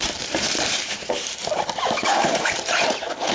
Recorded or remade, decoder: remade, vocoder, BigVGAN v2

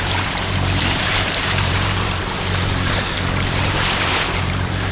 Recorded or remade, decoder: remade, vocoder, BigVGAN v2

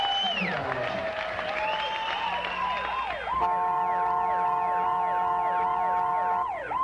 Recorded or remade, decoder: recorded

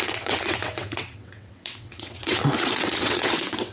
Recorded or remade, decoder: remade, vocoder, WaveNeXt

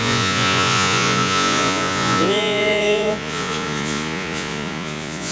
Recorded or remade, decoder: remade, vocoder, Vocos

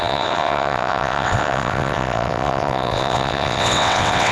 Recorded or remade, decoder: remade, vocoder, WaveNeXt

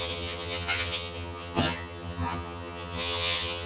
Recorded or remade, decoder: remade, vocoder, HiFi-GAN